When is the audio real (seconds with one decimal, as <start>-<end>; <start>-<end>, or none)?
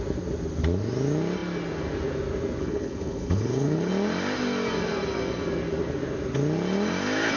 0.0-2.6; 3.9-7.4